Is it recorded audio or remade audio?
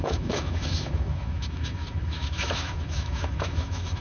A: remade